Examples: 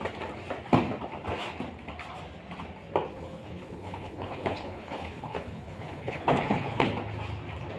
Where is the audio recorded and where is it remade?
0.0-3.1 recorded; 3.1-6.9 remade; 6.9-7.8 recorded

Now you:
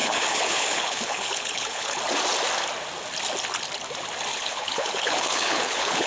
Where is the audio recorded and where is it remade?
0.0-2.0 remade; 2.0-4.3 recorded; 4.3-6.1 remade